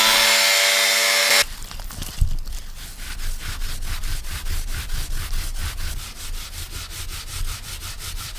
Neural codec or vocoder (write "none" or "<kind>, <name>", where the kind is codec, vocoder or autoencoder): none